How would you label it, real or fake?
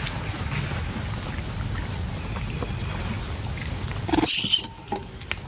real